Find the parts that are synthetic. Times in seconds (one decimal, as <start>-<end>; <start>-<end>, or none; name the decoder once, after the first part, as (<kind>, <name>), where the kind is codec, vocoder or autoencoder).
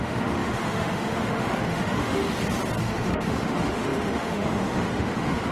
0.0-2.2 (autoencoder, DAC-VAE); 2.8-5.5